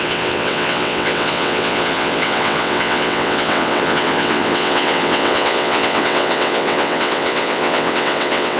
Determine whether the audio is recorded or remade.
remade